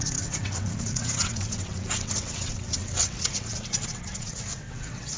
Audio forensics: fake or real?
fake